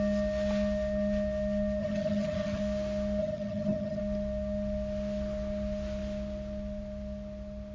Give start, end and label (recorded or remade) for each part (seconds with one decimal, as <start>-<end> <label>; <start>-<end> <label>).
0.0-1.8 recorded; 1.8-2.6 remade; 2.6-3.2 recorded; 3.2-4.0 remade; 4.0-7.7 recorded